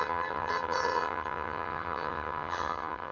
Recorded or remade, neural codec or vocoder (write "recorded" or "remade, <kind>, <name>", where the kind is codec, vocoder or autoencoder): remade, vocoder, HiFi-GAN